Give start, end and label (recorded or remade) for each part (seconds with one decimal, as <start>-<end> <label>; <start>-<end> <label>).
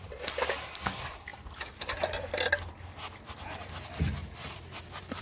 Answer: 0.0-4.2 recorded; 4.2-5.2 remade